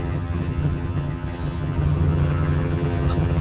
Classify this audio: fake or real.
fake